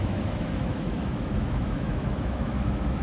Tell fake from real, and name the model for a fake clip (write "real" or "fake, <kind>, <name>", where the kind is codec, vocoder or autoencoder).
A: fake, autoencoder, DAC-VAE